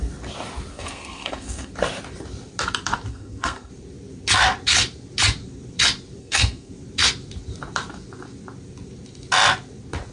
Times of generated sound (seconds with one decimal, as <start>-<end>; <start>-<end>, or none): 0.7-1.7; 3.1-3.7; 6.2-6.7